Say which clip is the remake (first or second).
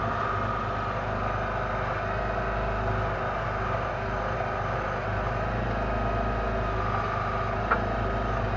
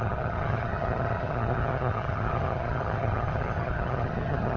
second